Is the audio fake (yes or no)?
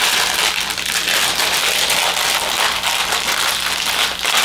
no